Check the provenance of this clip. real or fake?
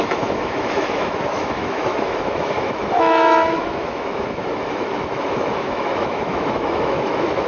fake